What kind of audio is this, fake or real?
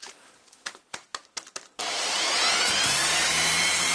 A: fake